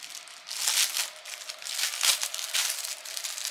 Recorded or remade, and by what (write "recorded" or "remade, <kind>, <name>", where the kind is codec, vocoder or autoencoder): recorded